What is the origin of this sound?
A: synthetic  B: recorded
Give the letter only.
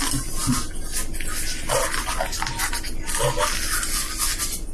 B